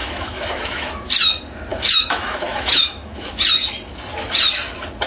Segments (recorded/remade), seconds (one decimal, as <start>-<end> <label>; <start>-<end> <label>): 0.0-0.9 remade; 0.9-1.7 recorded; 1.7-3.3 remade; 3.3-5.1 recorded